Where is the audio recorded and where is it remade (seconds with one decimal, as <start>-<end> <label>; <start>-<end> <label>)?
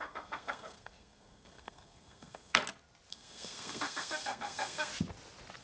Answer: 0.0-2.6 remade; 2.6-3.1 recorded; 3.1-4.9 remade; 4.9-5.6 recorded